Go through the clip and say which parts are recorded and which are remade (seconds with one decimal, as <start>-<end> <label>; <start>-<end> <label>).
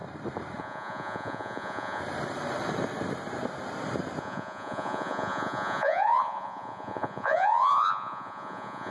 0.0-0.6 recorded; 0.6-2.0 remade; 2.0-4.2 recorded; 4.2-8.9 remade